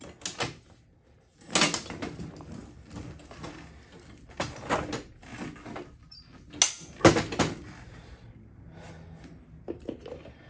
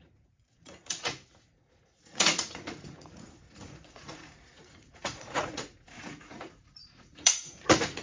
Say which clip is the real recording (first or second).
first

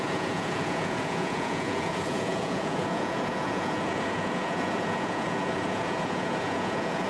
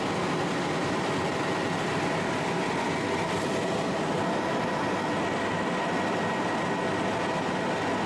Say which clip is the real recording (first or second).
second